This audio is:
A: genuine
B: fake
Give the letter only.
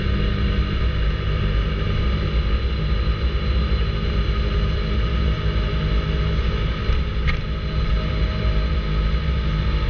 A